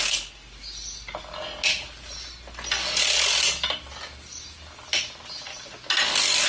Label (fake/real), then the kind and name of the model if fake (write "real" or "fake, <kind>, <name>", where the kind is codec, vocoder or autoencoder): real